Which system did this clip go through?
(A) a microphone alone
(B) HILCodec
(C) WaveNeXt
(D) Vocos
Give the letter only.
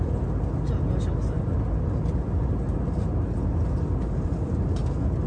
A